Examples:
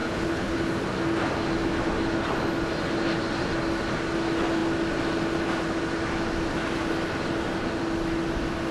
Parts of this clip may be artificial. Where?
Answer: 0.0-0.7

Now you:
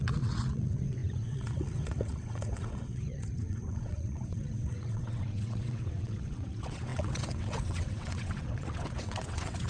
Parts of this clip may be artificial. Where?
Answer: 0.0-9.7

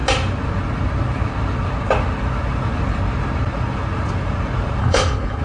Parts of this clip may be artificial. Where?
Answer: 4.8-5.4

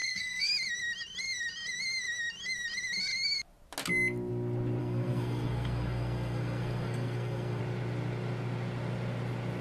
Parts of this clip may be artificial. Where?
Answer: 0.0-0.5; 4.8-7.6

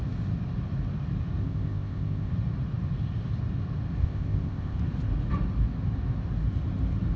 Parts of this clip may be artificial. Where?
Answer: 1.4-2.3; 4.0-4.8

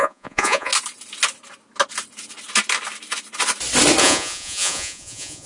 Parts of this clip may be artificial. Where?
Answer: 0.0-0.7; 4.0-5.5